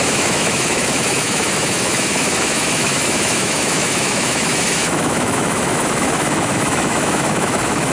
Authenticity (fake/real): fake